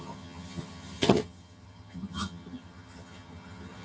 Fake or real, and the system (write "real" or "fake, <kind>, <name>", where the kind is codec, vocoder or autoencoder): fake, vocoder, HiFi-GAN